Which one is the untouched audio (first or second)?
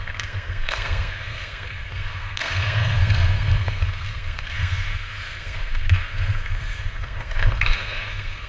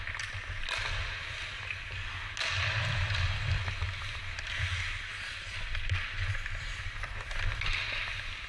second